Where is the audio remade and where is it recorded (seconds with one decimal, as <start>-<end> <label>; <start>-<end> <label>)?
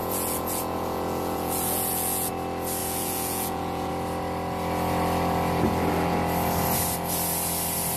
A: 0.0-2.3 remade; 2.3-2.8 recorded; 2.8-3.9 remade; 3.9-8.0 recorded